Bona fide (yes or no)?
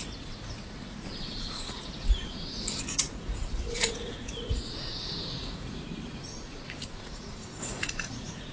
no